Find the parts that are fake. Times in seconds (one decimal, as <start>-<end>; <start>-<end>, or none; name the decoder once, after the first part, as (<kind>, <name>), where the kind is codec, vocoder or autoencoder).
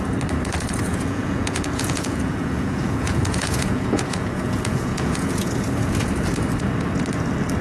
0.9-5.5 (vocoder, Vocos)